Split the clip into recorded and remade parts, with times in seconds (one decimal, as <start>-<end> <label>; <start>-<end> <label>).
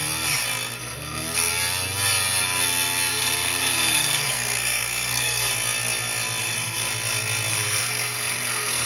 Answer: 0.0-0.8 recorded; 0.8-1.5 remade; 1.5-3.1 recorded; 3.1-5.5 remade; 5.5-6.4 recorded; 6.4-6.9 remade; 6.9-7.5 recorded; 7.5-8.9 remade